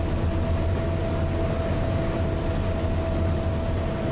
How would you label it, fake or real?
real